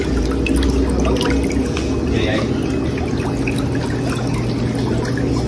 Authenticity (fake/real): real